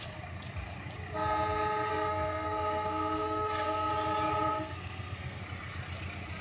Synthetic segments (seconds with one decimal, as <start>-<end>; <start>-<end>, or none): 1.9-3.9; 4.5-5.4